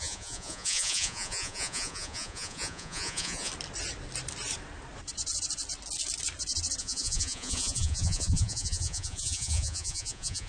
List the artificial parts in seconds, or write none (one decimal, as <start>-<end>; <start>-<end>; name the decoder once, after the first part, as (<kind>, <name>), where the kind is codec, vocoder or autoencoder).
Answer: 0.0-3.5 (vocoder, Vocos); 6.8-10.5